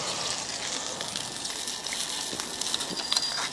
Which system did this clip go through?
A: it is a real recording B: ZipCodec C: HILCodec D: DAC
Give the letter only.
A